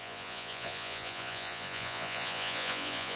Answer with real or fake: fake